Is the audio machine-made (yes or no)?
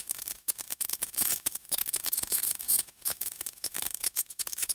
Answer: yes